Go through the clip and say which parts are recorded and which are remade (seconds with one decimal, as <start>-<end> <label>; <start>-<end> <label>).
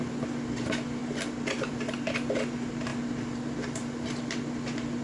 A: 0.0-5.0 recorded